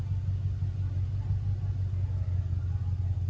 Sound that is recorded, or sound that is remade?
recorded